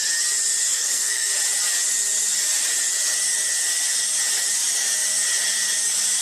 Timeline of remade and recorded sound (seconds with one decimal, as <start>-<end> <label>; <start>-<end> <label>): 0.0-0.7 recorded; 0.7-1.3 remade; 1.3-6.2 recorded